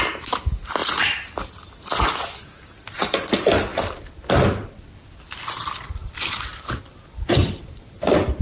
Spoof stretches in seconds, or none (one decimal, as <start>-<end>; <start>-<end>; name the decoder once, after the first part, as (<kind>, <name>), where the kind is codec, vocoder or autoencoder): 6.0-8.4 (vocoder, BigVGAN v2)